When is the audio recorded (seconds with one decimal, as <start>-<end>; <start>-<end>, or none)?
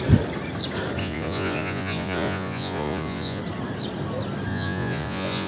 0.0-1.0; 3.4-4.5